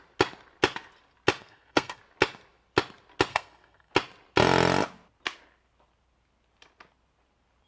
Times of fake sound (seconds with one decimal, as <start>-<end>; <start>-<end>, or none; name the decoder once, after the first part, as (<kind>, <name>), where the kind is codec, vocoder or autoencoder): 1.4-2.0 (codec, SNAC); 3.3-3.9